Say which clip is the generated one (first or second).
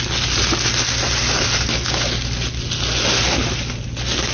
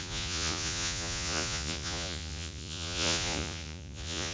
second